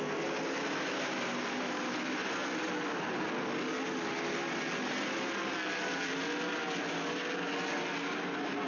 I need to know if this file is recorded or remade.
recorded